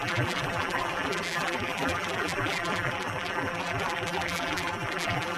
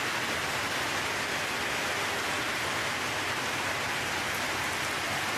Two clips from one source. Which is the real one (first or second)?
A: second